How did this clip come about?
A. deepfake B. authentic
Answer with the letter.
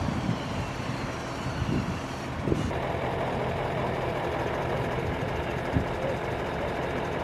A